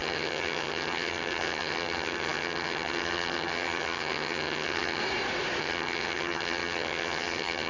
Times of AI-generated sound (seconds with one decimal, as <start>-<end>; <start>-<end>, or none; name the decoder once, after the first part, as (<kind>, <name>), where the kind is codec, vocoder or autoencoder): 0.0-5.0 (vocoder, HiFi-GAN); 5.6-7.7